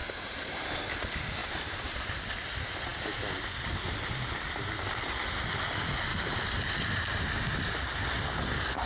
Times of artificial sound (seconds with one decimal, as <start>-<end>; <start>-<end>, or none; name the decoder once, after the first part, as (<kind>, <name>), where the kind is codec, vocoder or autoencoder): 0.0-0.8 (vocoder, BigVGAN v2); 1.4-2.2; 6.1-6.6